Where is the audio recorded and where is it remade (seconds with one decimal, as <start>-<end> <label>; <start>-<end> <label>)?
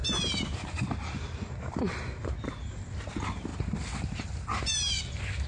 0.0-5.5 recorded